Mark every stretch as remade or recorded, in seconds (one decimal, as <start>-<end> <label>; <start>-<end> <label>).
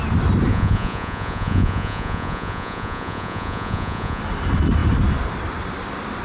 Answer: 0.0-0.5 recorded; 0.5-4.2 remade; 4.2-6.2 recorded